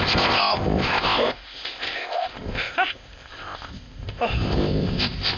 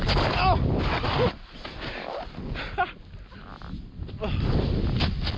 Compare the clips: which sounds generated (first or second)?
first